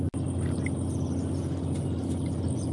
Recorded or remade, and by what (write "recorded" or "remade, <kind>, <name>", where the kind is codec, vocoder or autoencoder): recorded